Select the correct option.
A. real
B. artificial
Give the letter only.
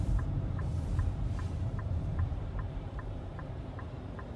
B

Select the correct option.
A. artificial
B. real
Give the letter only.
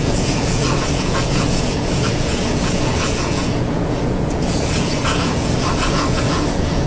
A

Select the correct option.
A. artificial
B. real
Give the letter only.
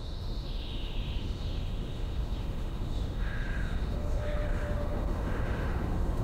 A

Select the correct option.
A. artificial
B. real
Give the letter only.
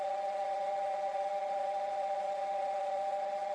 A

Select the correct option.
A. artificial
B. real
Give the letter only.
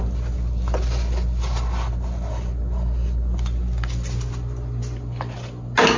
B